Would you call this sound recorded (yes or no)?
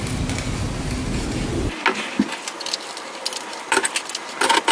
yes